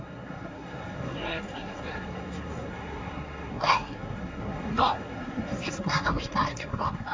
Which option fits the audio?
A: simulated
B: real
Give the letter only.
A